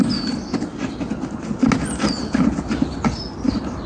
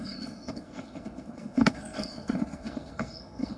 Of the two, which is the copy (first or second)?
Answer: second